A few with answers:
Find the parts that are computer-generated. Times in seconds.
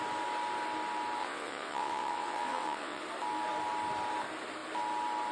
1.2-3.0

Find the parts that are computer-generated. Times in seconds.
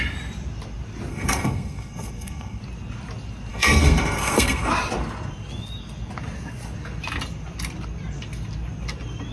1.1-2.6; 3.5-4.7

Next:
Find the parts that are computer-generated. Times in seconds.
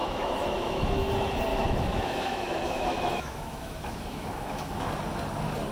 0.0-1.1; 1.5-4.9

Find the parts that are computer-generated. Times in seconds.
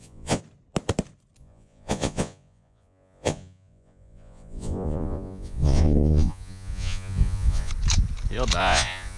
0.0-0.4; 1.4-7.7; 8.6-9.2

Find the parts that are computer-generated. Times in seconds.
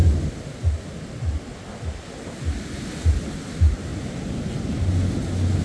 none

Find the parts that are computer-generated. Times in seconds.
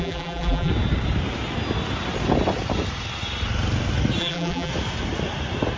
0.0-0.7; 4.2-4.7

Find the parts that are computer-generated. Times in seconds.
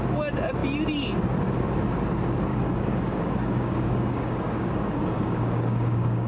2.5-6.3